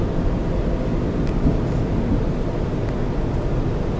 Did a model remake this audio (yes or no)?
no